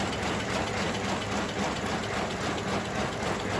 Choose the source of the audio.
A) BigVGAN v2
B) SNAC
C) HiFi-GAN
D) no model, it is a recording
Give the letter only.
D